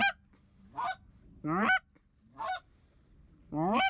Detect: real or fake real